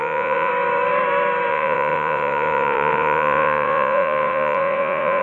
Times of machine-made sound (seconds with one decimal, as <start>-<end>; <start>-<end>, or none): 0.0-0.5; 1.5-5.2